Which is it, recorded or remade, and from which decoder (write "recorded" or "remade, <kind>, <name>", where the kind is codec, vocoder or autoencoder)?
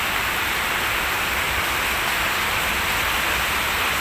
recorded